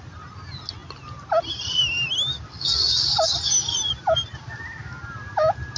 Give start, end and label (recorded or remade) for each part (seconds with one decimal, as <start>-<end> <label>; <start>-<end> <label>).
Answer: 0.0-5.8 recorded